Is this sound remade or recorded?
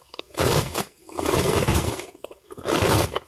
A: remade